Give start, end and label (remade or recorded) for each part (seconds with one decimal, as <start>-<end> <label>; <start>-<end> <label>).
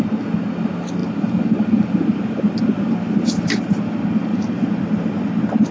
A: 0.0-1.0 recorded; 1.0-3.0 remade; 3.0-4.3 recorded; 4.3-5.2 remade; 5.2-5.7 recorded